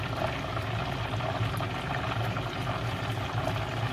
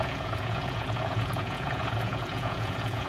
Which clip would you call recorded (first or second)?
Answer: first